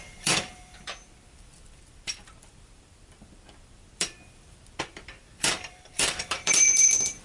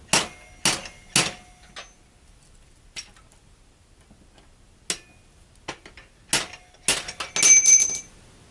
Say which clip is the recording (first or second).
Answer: second